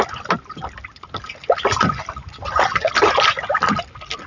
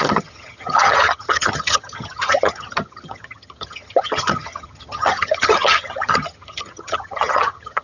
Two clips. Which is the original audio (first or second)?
first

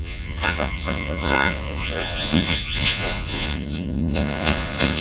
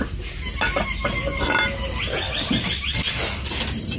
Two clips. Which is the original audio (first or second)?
second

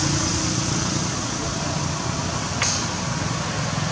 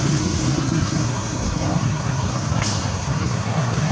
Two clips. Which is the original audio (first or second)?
first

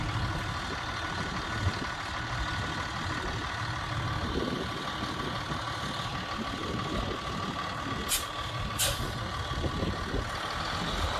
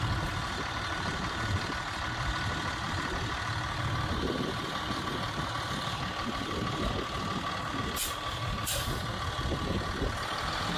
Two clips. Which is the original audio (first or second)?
first